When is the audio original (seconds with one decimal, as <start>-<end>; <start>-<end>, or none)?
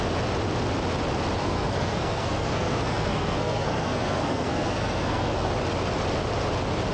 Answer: 0.0-1.4; 5.5-6.9